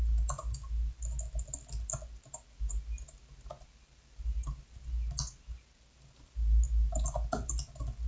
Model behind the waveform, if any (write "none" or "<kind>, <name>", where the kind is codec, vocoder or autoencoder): none